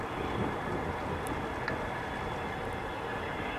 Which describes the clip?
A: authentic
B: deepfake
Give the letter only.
A